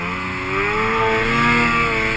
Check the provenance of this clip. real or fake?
real